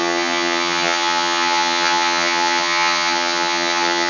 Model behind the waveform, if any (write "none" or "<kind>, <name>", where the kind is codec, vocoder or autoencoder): vocoder, HiFi-GAN